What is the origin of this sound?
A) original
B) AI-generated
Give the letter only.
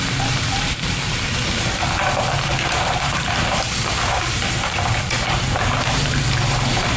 B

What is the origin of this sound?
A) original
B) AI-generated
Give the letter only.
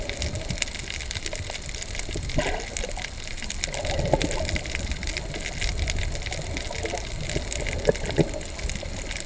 A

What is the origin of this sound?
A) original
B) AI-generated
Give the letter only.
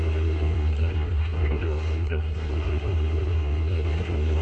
B